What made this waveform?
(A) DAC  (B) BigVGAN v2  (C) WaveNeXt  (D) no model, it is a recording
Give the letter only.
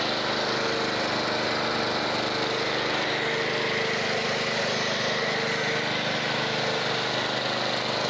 D